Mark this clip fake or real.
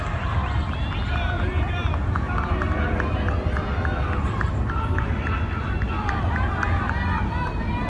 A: real